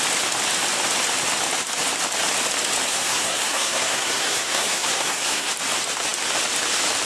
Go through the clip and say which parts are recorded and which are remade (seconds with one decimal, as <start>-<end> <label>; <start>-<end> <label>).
0.0-2.9 recorded; 2.9-5.5 remade; 5.5-7.1 recorded